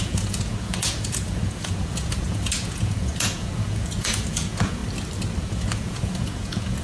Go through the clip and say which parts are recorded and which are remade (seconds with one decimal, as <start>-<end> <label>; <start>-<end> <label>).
0.0-4.8 remade; 4.8-5.4 recorded; 5.4-6.8 remade